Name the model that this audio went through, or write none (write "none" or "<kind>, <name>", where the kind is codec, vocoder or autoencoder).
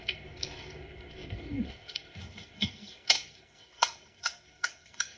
codec, SNAC